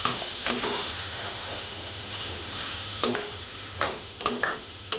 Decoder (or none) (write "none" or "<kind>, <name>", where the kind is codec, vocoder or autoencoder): autoencoder, DAC-VAE